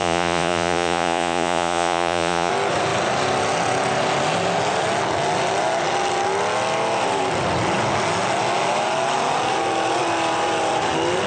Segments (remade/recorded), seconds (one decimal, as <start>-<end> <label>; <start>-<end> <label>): 0.0-2.5 remade; 2.5-11.3 recorded